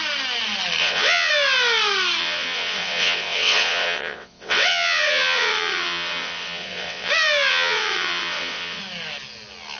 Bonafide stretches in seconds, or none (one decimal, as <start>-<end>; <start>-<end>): 0.0-0.8; 1.3-2.2; 7.1-7.5; 8.8-9.8